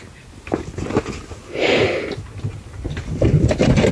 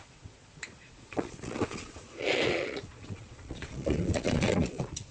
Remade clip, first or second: second